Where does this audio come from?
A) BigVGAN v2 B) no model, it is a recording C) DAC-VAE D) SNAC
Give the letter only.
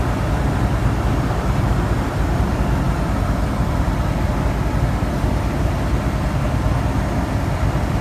A